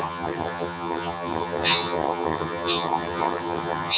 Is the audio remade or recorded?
remade